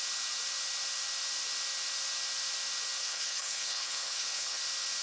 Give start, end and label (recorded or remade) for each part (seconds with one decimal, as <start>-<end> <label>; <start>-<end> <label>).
0.0-3.0 recorded; 3.0-4.6 remade; 4.6-5.0 recorded

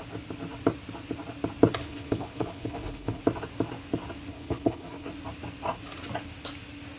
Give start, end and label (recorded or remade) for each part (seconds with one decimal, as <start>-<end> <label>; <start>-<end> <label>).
0.0-1.8 recorded; 1.8-3.2 remade; 3.2-4.3 recorded; 4.3-5.1 remade; 5.1-7.0 recorded

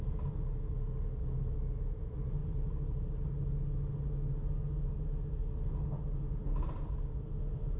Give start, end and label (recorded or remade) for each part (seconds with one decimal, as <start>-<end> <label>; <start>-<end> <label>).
0.0-7.8 recorded

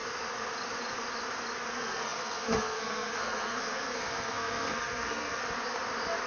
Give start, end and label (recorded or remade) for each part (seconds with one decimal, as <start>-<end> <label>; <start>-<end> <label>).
0.0-1.7 recorded; 1.7-5.4 remade; 5.4-6.3 recorded

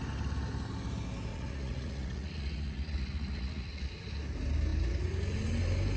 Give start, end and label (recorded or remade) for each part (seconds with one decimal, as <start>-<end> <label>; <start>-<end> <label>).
0.0-1.3 recorded; 1.3-3.9 remade; 3.9-6.0 recorded

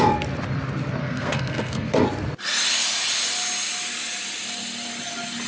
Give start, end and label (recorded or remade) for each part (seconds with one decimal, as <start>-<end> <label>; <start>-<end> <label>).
0.0-1.0 recorded; 1.0-1.9 remade; 1.9-5.5 recorded

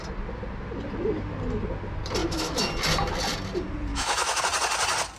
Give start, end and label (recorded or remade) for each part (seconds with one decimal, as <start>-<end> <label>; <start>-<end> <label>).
0.0-2.2 recorded; 2.2-2.7 remade; 2.7-3.9 recorded; 3.9-4.4 remade; 4.4-5.2 recorded